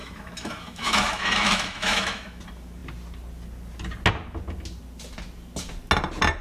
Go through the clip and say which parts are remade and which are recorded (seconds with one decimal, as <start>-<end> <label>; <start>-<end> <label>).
0.0-2.4 remade; 2.4-6.4 recorded